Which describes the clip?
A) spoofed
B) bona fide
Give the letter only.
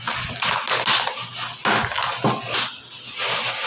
B